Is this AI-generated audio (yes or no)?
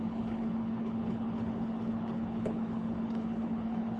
yes